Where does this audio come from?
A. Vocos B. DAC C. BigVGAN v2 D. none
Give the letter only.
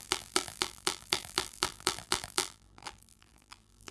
C